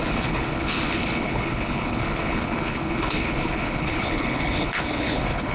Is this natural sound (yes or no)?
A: no